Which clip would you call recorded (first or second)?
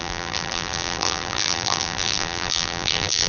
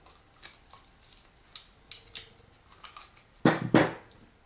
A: second